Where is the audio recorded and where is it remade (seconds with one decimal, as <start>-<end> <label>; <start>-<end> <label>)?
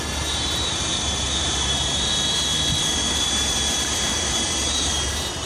0.0-2.1 remade; 2.1-3.2 recorded; 3.2-5.5 remade